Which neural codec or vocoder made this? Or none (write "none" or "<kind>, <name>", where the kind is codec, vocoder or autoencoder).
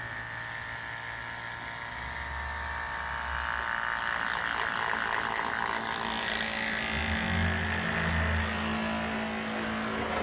none